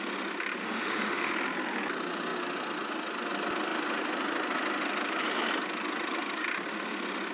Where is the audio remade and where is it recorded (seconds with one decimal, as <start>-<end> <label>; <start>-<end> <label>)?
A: 0.0-0.6 recorded; 0.6-1.3 remade; 1.3-7.3 recorded